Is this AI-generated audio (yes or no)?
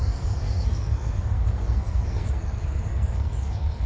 yes